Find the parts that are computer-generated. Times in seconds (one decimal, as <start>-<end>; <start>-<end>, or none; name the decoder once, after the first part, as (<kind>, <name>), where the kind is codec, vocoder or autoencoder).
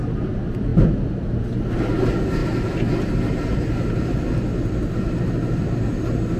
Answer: none